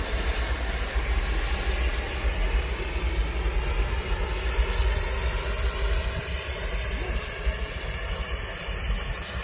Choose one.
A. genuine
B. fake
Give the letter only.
A